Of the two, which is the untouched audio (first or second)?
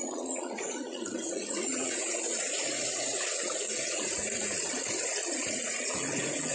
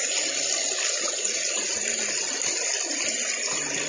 second